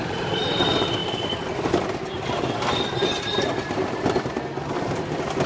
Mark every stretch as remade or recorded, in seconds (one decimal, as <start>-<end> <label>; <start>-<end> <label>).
0.0-5.5 recorded